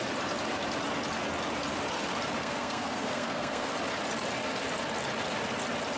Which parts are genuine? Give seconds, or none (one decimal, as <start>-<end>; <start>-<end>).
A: 0.0-2.4; 3.7-6.0